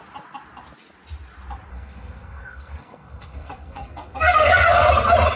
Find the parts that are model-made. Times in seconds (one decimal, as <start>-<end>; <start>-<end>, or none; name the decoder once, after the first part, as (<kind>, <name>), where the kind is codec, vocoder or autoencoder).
1.7-4.9 (codec, SNAC)